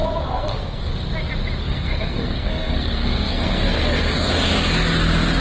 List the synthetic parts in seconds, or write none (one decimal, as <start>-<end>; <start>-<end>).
0.0-0.9; 1.6-4.3